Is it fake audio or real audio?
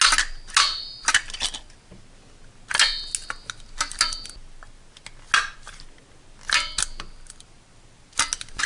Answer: real